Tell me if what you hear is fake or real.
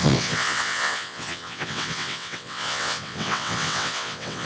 fake